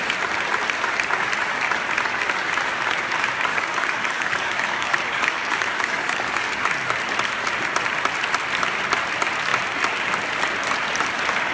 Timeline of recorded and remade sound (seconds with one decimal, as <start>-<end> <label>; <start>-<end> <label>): 0.0-3.5 recorded; 3.5-6.7 remade; 6.7-11.5 recorded